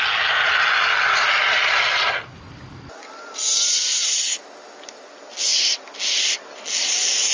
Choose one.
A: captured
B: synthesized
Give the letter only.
A